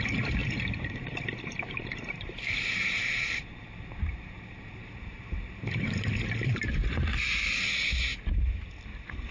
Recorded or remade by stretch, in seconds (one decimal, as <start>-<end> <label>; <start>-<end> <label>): 0.0-0.4 recorded; 0.4-5.0 remade; 5.0-9.3 recorded